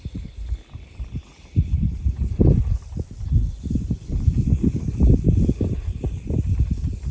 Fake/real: real